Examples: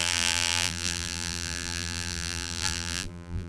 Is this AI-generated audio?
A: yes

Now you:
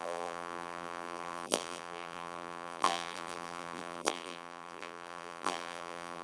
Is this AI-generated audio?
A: yes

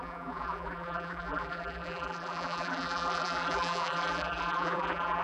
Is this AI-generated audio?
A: yes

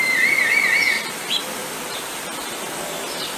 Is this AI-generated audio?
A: yes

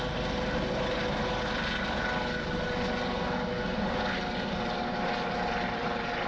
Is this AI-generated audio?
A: no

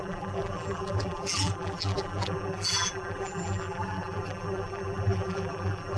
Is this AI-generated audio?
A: yes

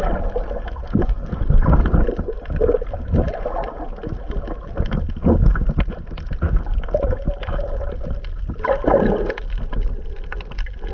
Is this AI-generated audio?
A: no